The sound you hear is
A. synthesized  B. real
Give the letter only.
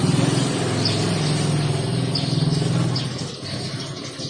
B